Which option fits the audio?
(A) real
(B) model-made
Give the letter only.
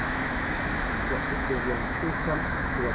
B